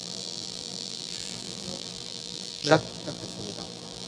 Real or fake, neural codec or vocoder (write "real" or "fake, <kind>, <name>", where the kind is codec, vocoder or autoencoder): fake, vocoder, BigVGAN v2